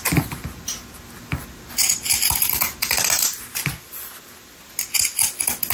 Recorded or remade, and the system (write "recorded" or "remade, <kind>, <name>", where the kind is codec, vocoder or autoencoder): recorded